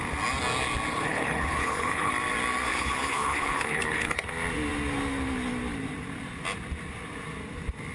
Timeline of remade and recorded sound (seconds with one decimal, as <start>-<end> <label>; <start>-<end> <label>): 0.0-0.9 recorded; 0.9-2.1 remade; 2.1-2.7 recorded; 2.7-4.2 remade; 4.2-7.9 recorded